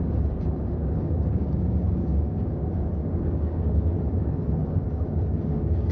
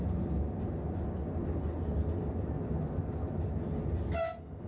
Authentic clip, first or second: second